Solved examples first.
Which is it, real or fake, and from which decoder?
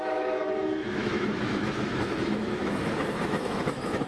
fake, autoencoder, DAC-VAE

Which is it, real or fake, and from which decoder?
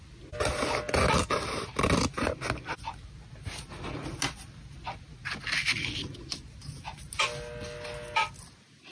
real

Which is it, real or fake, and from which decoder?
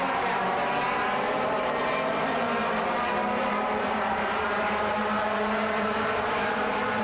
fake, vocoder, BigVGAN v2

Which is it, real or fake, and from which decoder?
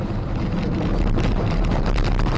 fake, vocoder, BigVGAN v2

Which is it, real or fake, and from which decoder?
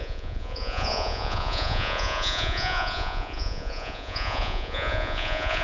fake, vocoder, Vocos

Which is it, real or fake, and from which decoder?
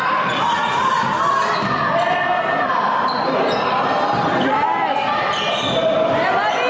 real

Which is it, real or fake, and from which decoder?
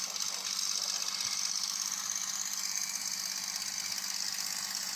real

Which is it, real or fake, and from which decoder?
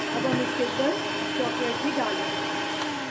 real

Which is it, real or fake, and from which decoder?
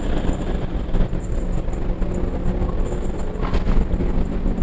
real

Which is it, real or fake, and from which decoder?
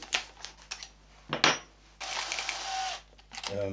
real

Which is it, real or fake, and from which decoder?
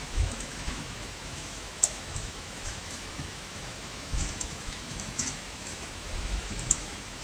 fake, autoencoder, DAC-VAE